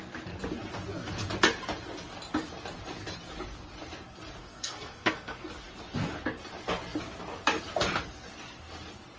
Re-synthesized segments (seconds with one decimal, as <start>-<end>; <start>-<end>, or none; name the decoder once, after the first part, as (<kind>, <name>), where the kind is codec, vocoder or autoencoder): 4.4-5.5 (codec, SNAC)